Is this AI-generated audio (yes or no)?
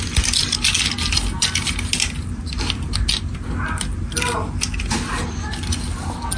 no